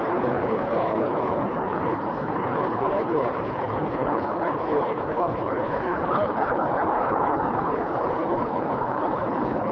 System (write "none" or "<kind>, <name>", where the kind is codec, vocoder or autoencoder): codec, HILCodec